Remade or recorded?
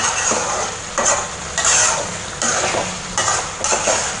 recorded